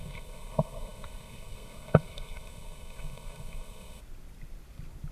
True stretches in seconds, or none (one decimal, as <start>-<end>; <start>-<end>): 4.0-5.1

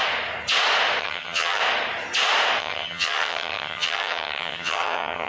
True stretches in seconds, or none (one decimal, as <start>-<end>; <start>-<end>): 0.0-1.0; 1.6-2.6